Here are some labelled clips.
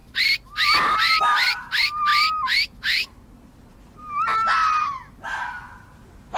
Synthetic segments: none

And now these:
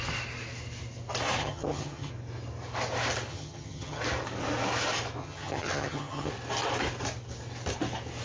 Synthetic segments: 1.4-2.1; 3.3-4.0; 5.2-6.3

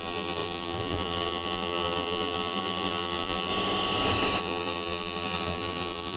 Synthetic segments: 0.0-3.5; 4.4-6.2

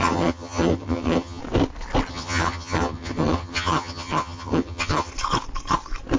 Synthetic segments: 0.0-1.4; 2.1-5.1